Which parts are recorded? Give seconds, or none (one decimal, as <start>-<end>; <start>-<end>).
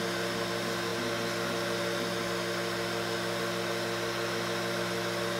0.0-5.4